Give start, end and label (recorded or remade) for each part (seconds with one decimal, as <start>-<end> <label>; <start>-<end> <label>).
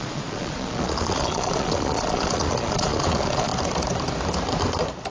0.0-3.5 remade; 3.5-5.1 recorded